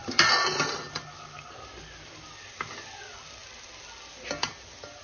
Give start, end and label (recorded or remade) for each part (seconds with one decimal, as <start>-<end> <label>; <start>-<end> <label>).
0.0-5.0 recorded